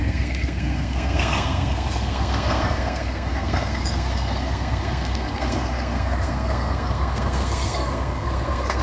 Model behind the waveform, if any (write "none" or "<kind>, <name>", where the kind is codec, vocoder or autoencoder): codec, SNAC